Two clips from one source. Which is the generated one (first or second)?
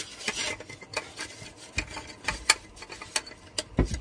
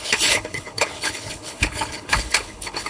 second